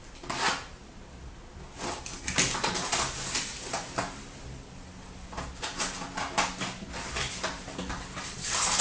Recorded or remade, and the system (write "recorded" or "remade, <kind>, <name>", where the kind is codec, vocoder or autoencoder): recorded